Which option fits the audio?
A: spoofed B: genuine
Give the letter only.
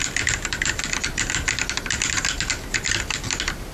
B